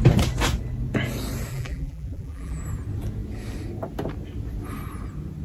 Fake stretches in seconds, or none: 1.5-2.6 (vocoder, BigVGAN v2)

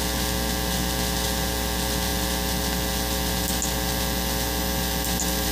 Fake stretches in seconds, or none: none

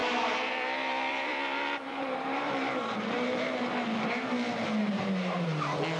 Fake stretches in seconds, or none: 0.0-3.6 (vocoder, BigVGAN v2); 4.8-5.4